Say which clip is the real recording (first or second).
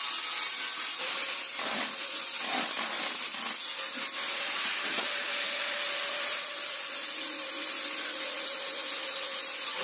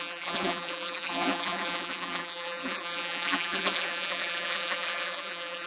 first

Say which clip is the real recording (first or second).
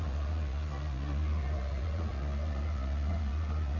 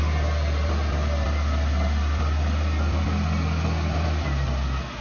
second